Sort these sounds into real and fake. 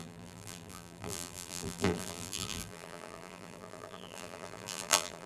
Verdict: fake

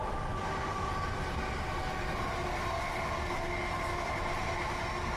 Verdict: real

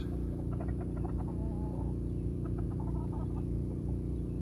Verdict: fake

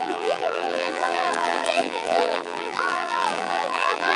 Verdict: fake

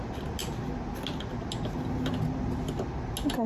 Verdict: real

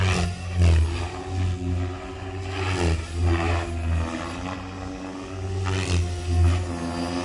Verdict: real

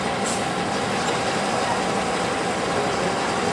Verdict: real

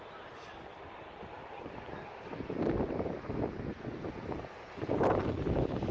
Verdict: real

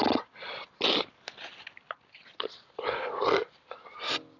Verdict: real